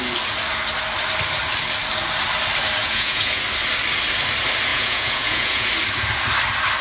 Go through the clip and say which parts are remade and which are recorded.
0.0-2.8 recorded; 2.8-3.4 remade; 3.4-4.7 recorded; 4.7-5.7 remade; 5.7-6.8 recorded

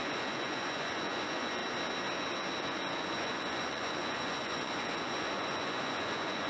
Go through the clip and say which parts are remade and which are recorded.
0.0-1.6 remade; 1.6-2.6 recorded; 2.6-6.5 remade

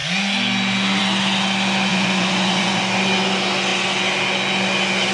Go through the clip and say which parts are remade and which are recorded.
0.0-1.9 recorded; 1.9-2.8 remade; 2.8-5.1 recorded

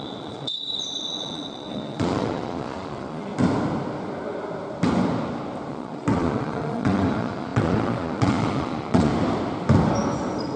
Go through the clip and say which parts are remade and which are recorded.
0.0-3.3 remade; 3.3-5.7 recorded; 5.7-9.1 remade; 9.1-10.6 recorded

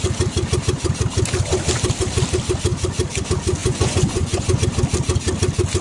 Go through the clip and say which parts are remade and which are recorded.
0.0-3.6 recorded; 3.6-4.6 remade; 4.6-5.8 recorded